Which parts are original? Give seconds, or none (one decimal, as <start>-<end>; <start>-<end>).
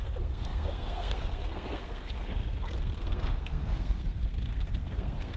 none